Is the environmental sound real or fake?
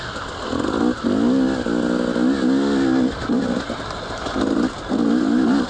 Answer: real